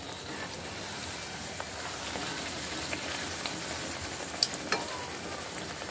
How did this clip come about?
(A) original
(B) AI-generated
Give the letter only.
A